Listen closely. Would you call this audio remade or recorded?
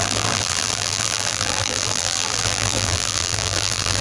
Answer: remade